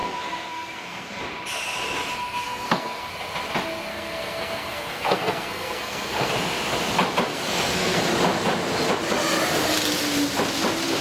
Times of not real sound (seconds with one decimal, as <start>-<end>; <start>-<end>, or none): 0.0-1.2; 2.2-3.1; 3.9-6.3; 7.3-8.0